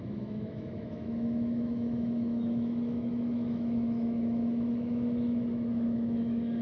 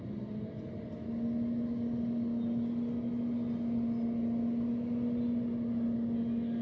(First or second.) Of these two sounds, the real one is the second